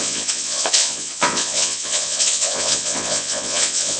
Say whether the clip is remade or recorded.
remade